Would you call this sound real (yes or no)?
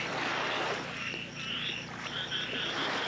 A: yes